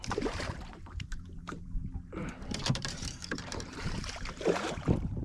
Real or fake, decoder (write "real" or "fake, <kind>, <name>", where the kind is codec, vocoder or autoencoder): fake, vocoder, BigVGAN v2